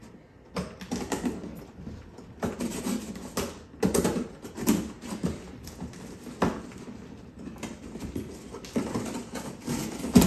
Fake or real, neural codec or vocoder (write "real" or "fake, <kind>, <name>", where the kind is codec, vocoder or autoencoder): real